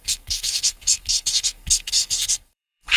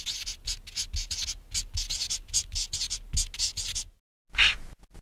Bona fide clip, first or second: second